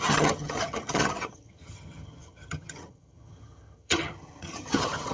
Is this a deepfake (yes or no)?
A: yes